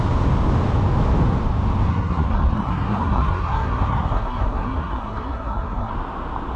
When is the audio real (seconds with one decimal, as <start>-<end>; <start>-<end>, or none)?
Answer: 0.0-1.9; 5.9-6.6